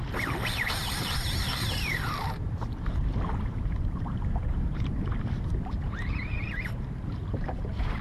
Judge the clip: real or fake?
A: fake